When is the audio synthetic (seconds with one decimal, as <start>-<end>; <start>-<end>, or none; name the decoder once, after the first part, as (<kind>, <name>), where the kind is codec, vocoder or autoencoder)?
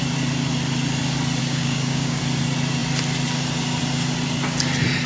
1.4-2.2 (codec, DAC)